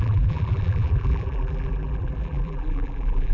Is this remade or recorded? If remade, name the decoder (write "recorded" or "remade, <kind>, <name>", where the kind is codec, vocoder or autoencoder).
remade, vocoder, BigVGAN v2